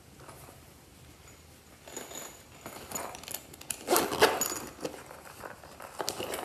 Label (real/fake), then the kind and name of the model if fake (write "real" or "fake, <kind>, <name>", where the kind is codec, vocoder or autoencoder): real